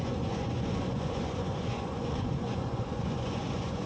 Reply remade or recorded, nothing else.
remade